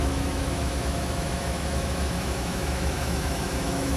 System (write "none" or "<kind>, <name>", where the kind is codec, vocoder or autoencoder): autoencoder, DAC-VAE